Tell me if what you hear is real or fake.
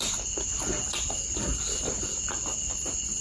real